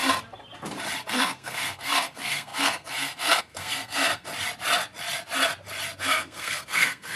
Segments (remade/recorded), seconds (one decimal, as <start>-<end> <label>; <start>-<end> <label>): 0.0-1.1 recorded; 1.1-4.3 remade; 4.3-6.0 recorded; 6.0-7.2 remade